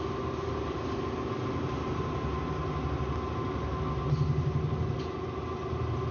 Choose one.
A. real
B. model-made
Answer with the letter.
A